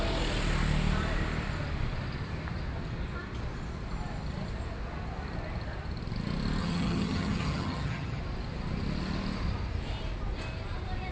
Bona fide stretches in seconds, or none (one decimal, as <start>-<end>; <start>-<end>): 0.0-6.6; 8.2-11.1